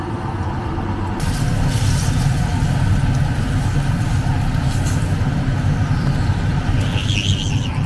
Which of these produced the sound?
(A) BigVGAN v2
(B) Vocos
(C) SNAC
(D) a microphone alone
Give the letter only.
D